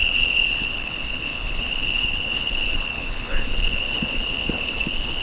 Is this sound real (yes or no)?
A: no